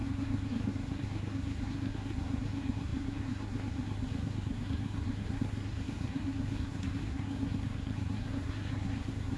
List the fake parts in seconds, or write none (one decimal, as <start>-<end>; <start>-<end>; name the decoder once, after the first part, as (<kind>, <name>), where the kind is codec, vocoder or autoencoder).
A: 0.0-9.4 (codec, SNAC)